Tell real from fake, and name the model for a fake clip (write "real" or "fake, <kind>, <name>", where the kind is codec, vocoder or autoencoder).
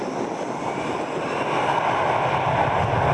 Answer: real